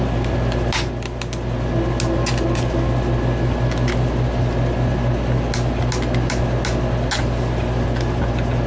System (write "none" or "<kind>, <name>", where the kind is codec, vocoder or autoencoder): none